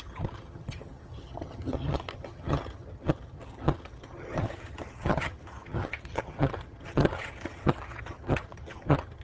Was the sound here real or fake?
fake